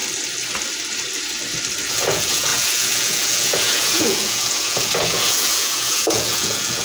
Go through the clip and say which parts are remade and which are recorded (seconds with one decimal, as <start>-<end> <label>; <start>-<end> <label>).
0.0-1.9 recorded; 1.9-6.8 remade